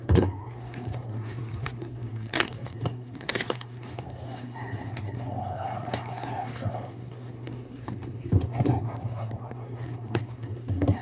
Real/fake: fake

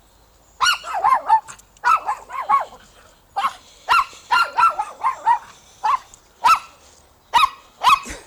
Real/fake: real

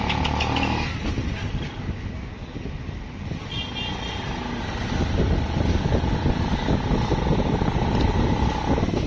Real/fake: real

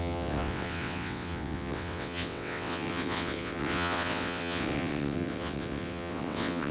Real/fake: fake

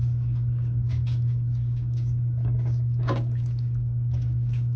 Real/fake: fake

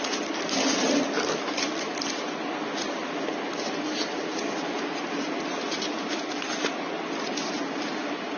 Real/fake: real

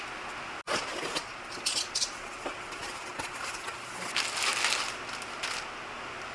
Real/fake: real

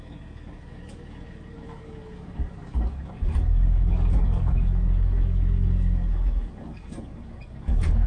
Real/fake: fake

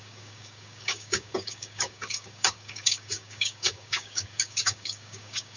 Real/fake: fake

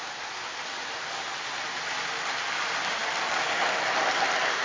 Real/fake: real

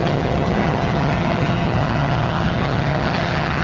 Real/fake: fake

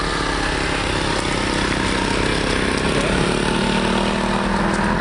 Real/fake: real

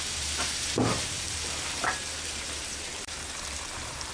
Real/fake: fake